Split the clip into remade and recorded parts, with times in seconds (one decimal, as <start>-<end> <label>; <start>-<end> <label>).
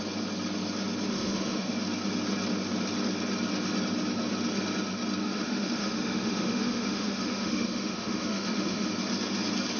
0.0-1.1 recorded; 1.1-1.7 remade; 1.7-5.2 recorded; 5.2-8.9 remade; 8.9-9.8 recorded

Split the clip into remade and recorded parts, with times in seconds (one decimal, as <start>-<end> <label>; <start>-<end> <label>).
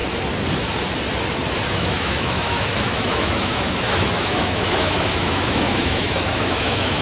0.0-1.7 recorded; 1.7-7.0 remade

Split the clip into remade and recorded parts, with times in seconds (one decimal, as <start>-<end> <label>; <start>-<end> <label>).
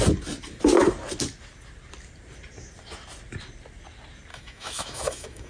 0.0-4.3 recorded; 4.3-5.5 remade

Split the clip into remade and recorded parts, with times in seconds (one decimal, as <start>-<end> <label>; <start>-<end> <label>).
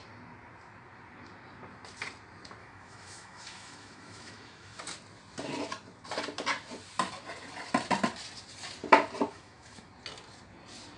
0.0-2.6 recorded; 2.6-4.8 remade; 4.8-9.3 recorded; 9.3-9.9 remade; 9.9-11.0 recorded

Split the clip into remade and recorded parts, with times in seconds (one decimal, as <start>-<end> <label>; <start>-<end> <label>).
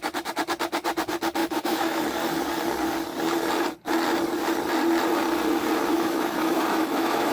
0.0-1.4 recorded; 1.4-2.0 remade; 2.0-5.9 recorded; 5.9-7.3 remade